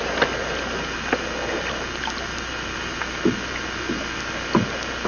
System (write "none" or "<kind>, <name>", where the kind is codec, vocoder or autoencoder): none